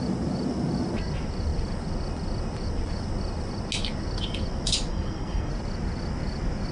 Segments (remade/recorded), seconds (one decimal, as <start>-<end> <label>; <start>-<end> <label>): 0.0-4.9 recorded; 4.9-5.5 remade; 5.5-6.7 recorded